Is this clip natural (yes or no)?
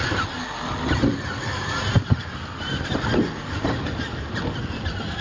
yes